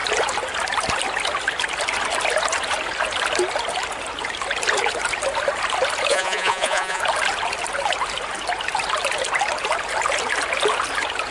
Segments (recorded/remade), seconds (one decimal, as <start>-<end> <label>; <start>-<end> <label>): 0.0-6.1 recorded; 6.1-7.0 remade; 7.0-11.3 recorded